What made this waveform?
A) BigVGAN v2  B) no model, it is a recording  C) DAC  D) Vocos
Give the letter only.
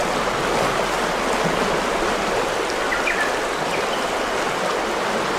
B